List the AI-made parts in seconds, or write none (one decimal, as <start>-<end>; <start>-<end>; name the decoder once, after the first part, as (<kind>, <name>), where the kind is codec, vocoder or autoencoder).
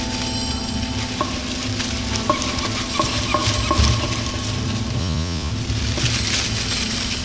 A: 5.0-5.5 (vocoder, Vocos)